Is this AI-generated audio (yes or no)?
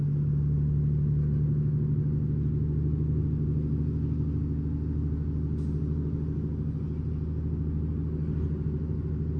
no